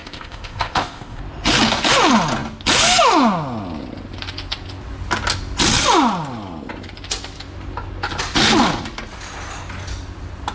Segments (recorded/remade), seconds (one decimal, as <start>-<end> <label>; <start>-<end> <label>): 0.0-1.2 remade; 1.2-10.5 recorded